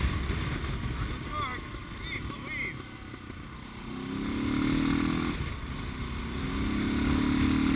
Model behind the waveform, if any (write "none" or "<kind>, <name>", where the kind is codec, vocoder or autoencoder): none